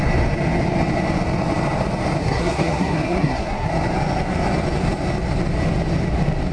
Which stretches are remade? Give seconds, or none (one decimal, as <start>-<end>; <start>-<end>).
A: 2.2-3.7